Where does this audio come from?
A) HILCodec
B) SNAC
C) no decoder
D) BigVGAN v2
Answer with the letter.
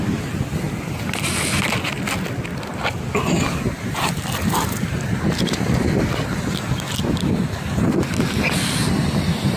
C